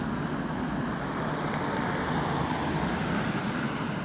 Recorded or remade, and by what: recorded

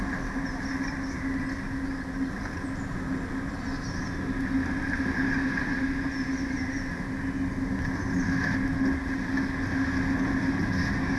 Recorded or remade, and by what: recorded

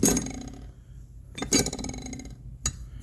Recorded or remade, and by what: recorded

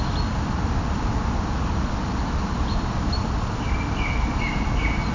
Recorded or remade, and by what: recorded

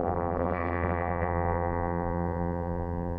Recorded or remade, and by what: remade, vocoder, BigVGAN v2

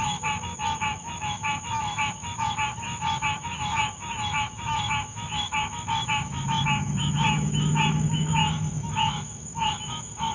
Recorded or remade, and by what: remade, autoencoder, DAC-VAE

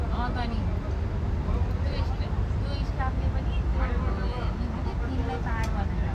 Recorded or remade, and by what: recorded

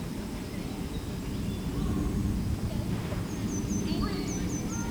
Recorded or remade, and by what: recorded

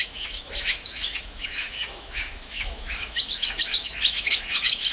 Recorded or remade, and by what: remade, autoencoder, DAC-VAE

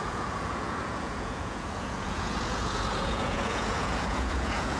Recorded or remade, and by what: remade, vocoder, Vocos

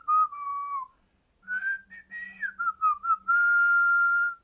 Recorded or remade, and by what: recorded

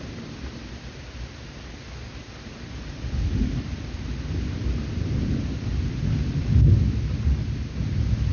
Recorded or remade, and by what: recorded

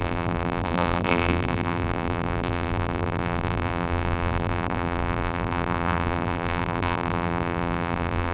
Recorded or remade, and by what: remade, vocoder, BigVGAN v2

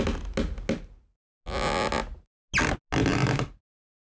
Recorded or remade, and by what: recorded